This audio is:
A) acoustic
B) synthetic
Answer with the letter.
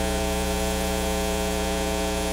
B